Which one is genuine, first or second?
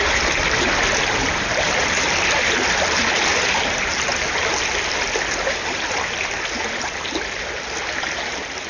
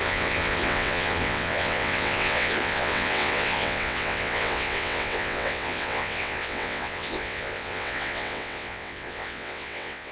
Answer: first